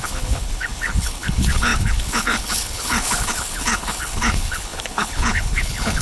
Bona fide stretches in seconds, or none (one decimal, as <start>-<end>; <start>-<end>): none